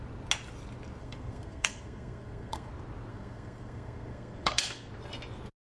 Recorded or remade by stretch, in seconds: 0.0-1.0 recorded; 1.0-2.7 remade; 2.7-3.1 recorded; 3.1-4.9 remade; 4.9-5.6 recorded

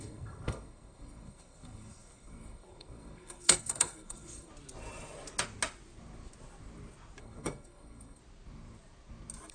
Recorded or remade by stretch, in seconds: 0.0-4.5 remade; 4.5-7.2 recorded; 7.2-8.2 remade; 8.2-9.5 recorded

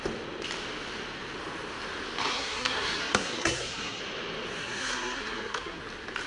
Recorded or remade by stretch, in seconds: 0.0-2.3 recorded; 2.3-4.0 remade; 4.0-4.6 recorded; 4.6-5.8 remade; 5.8-6.3 recorded

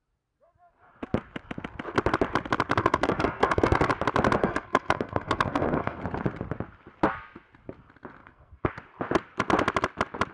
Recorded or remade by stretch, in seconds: 0.0-2.8 recorded; 2.8-3.9 remade; 3.9-4.4 recorded; 4.4-6.0 remade; 6.0-8.2 recorded; 8.2-8.7 remade; 8.7-10.3 recorded

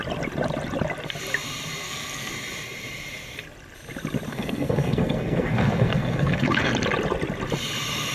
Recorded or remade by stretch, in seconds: 0.0-1.8 recorded; 1.8-2.3 remade; 2.3-4.3 recorded; 4.3-6.7 remade; 6.7-8.1 recorded